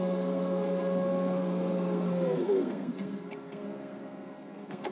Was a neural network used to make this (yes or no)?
yes